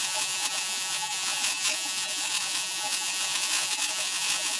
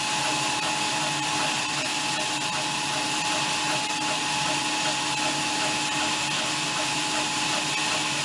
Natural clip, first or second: second